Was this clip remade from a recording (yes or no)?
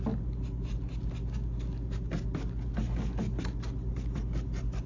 no